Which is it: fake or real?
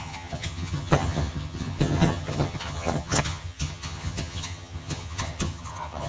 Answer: fake